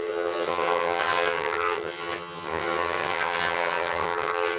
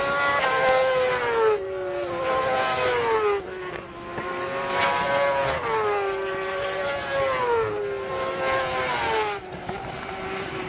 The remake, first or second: first